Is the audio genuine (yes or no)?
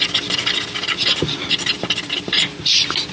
yes